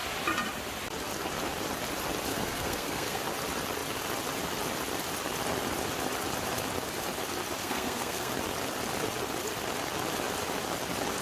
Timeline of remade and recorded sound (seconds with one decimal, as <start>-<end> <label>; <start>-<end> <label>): 0.0-2.3 recorded; 2.3-3.2 remade; 3.2-7.6 recorded; 7.6-8.3 remade; 8.3-11.2 recorded